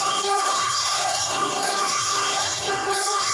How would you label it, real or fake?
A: fake